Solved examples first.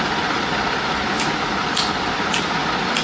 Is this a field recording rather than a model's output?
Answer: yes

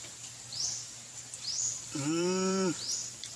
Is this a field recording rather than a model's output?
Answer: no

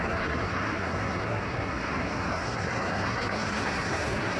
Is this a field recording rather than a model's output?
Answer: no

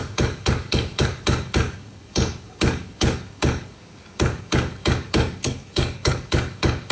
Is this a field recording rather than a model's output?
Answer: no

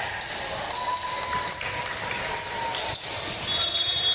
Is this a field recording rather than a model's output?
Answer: yes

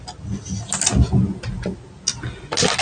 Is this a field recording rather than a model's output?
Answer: yes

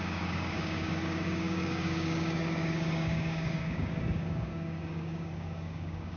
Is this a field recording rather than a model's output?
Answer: no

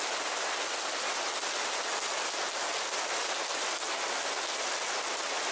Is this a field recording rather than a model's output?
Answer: yes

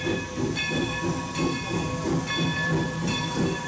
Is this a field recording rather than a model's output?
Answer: yes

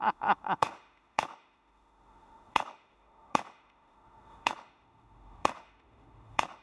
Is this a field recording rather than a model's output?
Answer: no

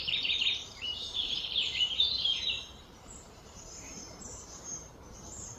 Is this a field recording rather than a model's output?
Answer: no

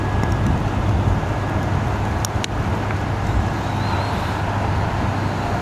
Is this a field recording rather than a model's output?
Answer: yes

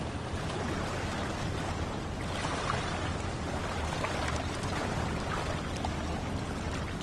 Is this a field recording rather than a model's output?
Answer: yes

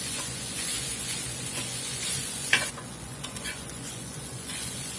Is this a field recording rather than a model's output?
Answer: no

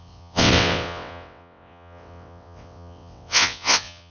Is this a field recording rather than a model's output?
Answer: no